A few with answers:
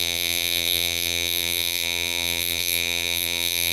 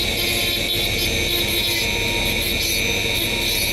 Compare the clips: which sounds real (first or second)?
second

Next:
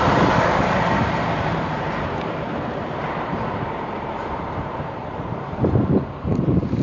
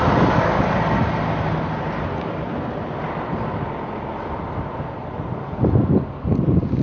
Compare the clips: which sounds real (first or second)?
second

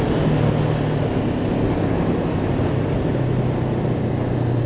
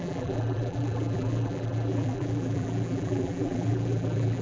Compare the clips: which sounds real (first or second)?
first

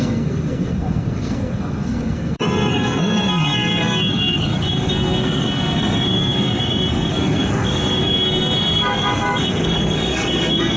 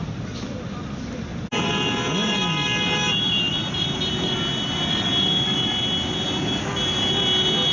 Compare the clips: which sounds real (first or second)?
second